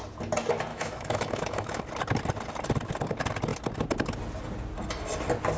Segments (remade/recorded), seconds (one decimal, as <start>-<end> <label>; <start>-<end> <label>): 0.0-0.7 recorded; 0.7-1.8 remade; 1.8-5.6 recorded